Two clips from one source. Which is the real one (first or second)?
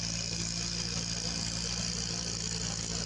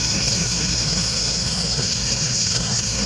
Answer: first